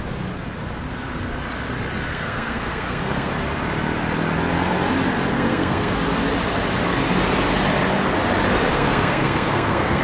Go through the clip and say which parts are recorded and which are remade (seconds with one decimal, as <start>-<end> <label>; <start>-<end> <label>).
0.0-2.1 recorded; 2.1-3.3 remade; 3.3-5.3 recorded; 5.3-5.9 remade; 5.9-8.7 recorded; 8.7-10.0 remade

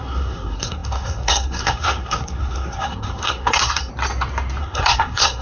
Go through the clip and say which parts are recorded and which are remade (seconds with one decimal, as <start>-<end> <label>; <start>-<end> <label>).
0.0-3.9 remade; 3.9-4.6 recorded; 4.6-5.4 remade

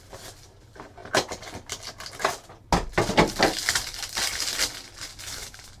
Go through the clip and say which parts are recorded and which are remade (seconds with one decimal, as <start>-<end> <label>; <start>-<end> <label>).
0.0-5.1 recorded; 5.1-5.8 remade

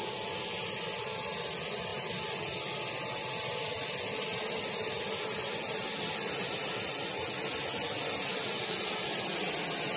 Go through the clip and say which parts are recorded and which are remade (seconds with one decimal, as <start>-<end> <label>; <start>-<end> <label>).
0.0-10.0 recorded

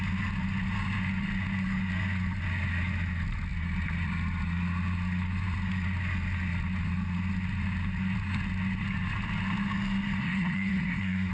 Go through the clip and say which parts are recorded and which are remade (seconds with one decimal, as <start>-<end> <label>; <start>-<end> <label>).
0.0-10.2 recorded; 10.2-11.3 remade

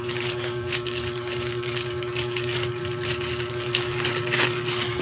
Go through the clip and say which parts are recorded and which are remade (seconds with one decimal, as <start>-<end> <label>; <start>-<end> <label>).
0.0-2.8 remade; 2.8-3.5 recorded; 3.5-5.0 remade

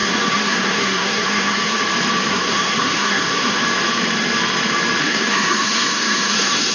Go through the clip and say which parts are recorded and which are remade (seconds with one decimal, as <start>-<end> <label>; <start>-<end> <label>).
0.0-1.8 remade; 1.8-2.3 recorded; 2.3-3.6 remade; 3.6-5.0 recorded; 5.0-6.7 remade